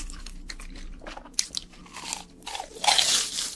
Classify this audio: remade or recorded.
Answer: recorded